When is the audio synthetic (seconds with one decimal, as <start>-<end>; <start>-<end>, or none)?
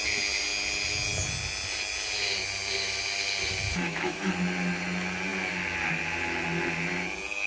3.7-4.3